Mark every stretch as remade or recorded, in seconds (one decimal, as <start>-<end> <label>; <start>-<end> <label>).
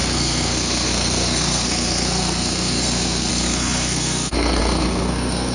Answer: 0.0-5.5 remade